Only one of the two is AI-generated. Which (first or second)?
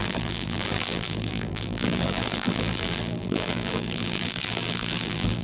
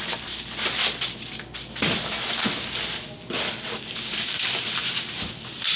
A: first